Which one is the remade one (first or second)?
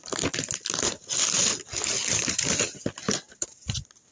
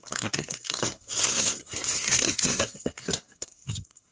second